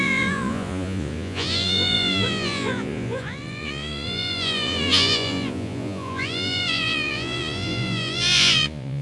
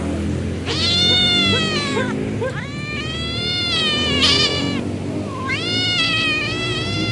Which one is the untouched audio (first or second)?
second